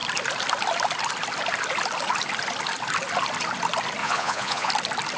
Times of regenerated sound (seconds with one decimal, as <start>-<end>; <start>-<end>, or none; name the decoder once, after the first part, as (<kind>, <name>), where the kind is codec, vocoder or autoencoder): 4.0-4.7 (vocoder, Vocos)